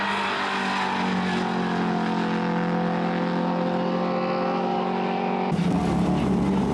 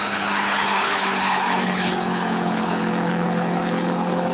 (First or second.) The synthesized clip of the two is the second